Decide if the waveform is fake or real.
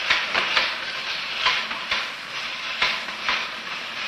fake